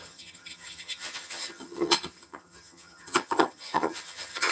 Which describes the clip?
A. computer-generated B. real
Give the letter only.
A